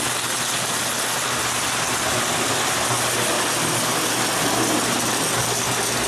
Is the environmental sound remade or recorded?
recorded